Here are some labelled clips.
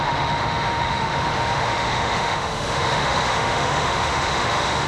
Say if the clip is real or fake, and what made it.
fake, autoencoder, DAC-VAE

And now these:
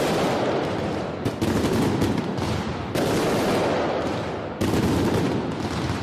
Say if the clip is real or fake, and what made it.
real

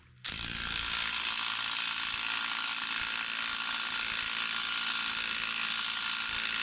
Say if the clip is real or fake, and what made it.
real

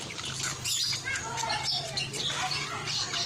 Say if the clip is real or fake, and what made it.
real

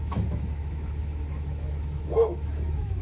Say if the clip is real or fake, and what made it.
fake, autoencoder, DAC-VAE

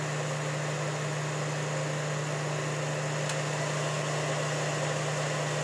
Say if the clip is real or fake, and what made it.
real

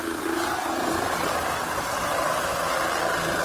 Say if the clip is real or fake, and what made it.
real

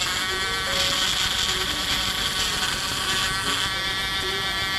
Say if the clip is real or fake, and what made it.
real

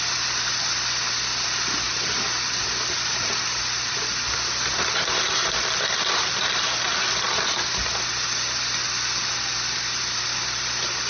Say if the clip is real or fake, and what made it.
real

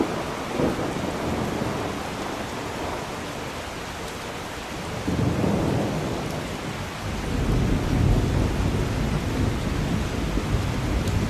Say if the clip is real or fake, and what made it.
real